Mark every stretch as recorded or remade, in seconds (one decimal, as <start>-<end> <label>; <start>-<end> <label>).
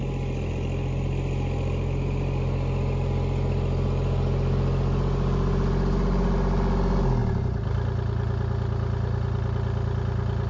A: 0.0-10.5 recorded